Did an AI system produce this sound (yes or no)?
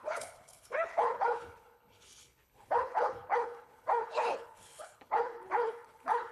yes